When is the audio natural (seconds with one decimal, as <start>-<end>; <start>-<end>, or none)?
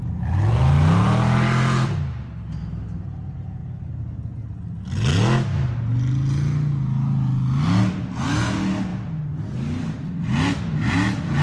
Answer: 0.0-11.4